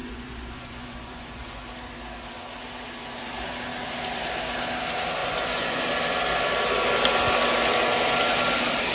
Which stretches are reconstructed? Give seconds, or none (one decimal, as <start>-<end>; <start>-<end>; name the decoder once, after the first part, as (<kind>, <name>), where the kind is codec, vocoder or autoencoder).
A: 0.0-1.6 (vocoder, Vocos); 5.2-5.8